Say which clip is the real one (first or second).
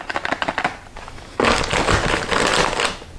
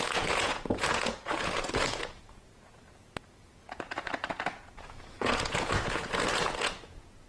first